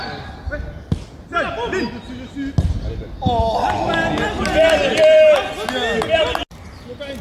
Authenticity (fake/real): real